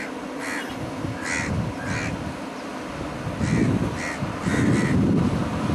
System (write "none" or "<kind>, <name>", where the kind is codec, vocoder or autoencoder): none